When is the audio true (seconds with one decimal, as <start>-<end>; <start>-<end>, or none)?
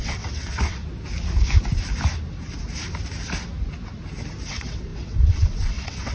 0.8-4.5